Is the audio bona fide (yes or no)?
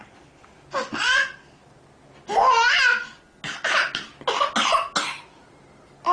yes